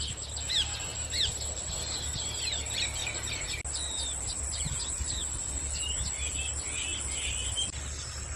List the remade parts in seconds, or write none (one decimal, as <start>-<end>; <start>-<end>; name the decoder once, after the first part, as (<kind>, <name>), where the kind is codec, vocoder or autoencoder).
none